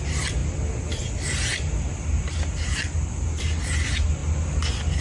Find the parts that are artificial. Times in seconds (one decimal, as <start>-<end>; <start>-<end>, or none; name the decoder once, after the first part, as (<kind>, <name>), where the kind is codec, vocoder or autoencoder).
none